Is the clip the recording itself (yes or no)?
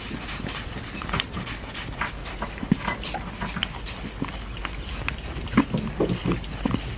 yes